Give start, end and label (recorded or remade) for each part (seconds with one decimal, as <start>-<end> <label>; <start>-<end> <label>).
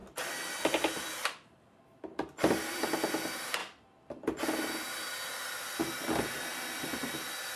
0.0-7.6 recorded